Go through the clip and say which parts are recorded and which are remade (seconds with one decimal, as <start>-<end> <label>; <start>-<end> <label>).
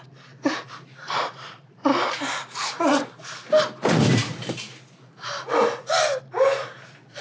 0.0-7.2 recorded